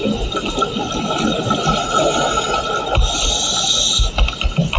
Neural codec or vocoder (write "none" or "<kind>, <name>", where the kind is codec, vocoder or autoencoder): none